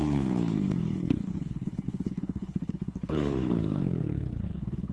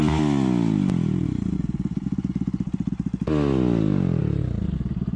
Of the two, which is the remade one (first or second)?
first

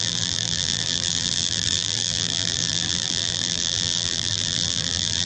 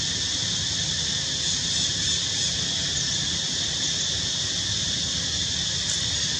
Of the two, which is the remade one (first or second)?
first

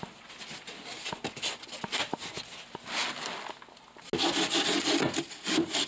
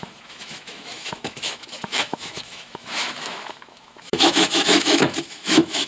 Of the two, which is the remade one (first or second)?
second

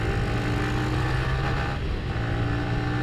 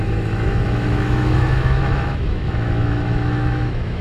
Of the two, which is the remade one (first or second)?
second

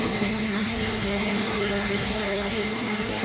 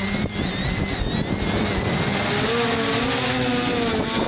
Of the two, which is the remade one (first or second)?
first